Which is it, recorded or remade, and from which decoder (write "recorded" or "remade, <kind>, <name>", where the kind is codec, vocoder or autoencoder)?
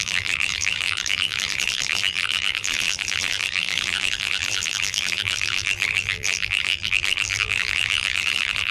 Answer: remade, vocoder, BigVGAN v2